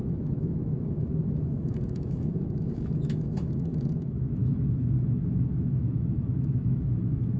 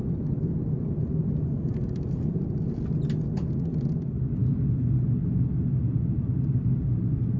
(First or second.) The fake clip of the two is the first